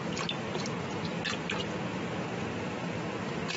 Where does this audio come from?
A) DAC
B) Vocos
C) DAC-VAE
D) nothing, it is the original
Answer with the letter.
D